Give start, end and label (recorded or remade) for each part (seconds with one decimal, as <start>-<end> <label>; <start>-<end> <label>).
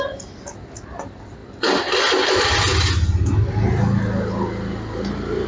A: 0.0-5.5 recorded